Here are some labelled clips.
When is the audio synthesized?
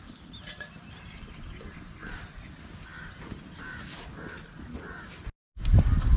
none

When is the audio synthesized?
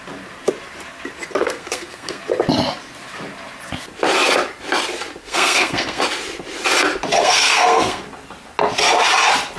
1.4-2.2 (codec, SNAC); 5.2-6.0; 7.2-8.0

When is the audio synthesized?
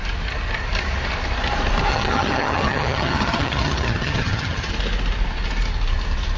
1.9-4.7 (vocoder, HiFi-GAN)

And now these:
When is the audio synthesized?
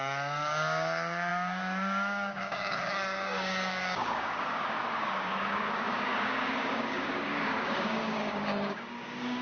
0.0-9.4 (codec, DAC)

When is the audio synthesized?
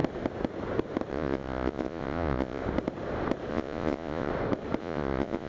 1.1-2.6 (vocoder, Vocos); 3.5-4.3; 4.8-5.5